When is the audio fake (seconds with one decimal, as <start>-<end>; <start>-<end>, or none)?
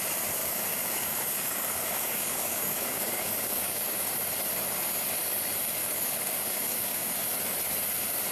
0.4-4.1; 5.8-7.1